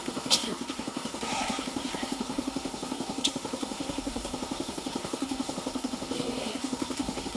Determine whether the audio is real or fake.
fake